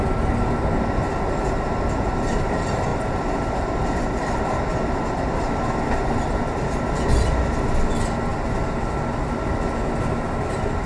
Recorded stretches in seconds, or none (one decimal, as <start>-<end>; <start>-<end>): 0.0-10.9